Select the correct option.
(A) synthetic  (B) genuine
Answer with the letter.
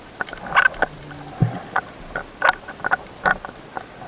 B